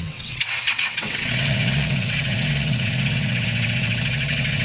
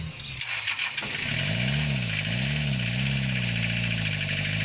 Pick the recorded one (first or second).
second